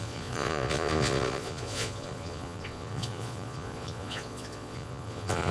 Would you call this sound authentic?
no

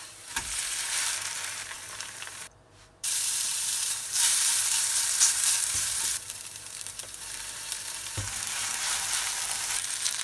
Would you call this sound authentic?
no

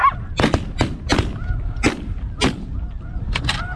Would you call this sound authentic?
yes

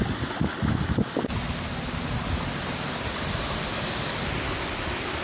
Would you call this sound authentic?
yes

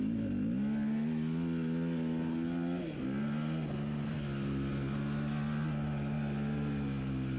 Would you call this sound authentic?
yes